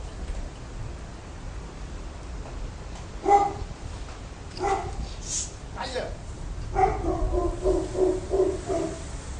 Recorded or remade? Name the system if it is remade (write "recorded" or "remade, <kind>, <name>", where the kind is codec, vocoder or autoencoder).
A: recorded